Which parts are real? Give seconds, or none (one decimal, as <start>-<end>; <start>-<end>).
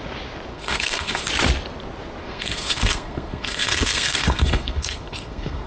0.0-0.5; 1.2-2.2